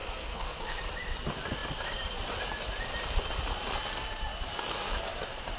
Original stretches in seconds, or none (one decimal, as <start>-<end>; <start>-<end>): 0.8-5.6